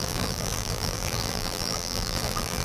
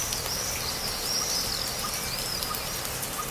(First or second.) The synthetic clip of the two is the first